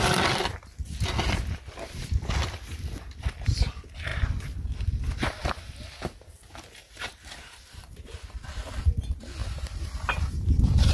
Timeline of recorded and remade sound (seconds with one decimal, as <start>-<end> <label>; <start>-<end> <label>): 0.0-4.1 recorded; 4.1-4.6 remade; 4.6-6.8 recorded; 6.8-8.2 remade; 8.2-9.4 recorded; 9.4-10.9 remade